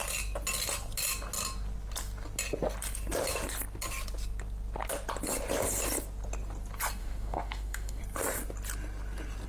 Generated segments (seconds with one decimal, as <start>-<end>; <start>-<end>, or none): 7.0-8.0